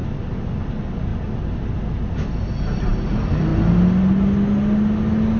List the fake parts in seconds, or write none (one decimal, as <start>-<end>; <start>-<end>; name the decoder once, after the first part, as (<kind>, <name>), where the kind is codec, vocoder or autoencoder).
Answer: none